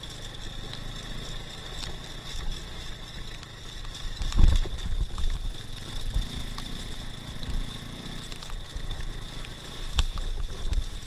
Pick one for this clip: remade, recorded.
recorded